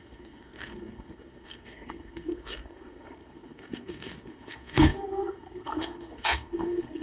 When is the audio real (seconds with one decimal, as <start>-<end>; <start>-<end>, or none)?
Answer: none